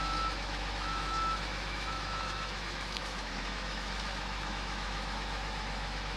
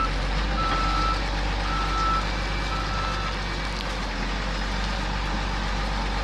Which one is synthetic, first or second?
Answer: first